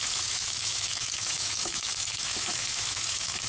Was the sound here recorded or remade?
remade